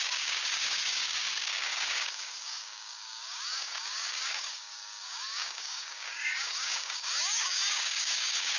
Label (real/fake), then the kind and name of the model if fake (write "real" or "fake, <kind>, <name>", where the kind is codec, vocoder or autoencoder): fake, codec, DAC